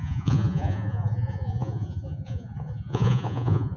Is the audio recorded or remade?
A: remade